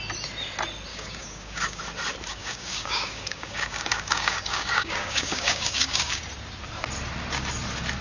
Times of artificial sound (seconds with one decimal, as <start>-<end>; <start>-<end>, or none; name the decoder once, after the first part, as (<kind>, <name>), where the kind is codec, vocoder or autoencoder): 0.9-1.8 (codec, DAC); 2.3-6.2